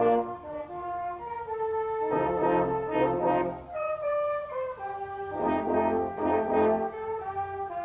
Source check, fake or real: real